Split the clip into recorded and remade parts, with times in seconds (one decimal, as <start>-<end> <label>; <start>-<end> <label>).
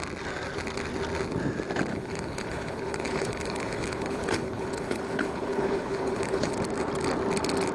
0.0-1.9 recorded; 1.9-6.5 remade; 6.5-7.7 recorded